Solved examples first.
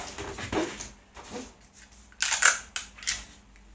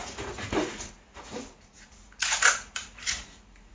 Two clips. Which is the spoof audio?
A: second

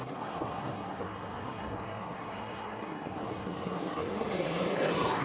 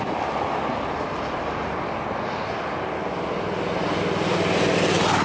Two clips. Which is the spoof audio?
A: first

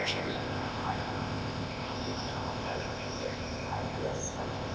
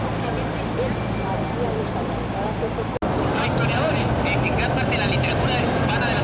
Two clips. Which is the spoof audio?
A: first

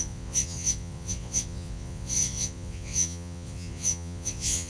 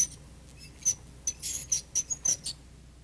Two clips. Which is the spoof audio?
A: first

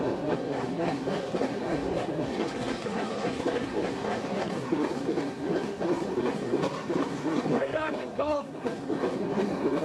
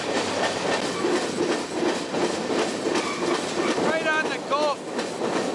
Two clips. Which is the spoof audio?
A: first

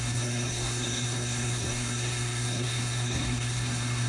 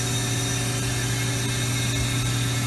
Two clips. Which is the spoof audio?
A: first